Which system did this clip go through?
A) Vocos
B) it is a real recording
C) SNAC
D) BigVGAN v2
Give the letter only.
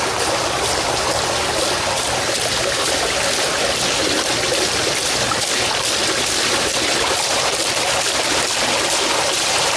B